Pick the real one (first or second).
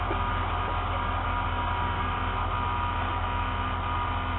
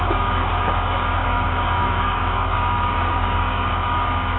first